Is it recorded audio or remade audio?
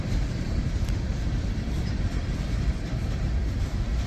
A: remade